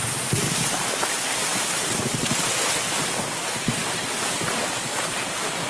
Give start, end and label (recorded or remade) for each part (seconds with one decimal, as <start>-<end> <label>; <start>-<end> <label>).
0.0-5.7 recorded